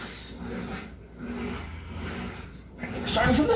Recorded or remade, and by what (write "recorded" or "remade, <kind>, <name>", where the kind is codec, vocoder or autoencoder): recorded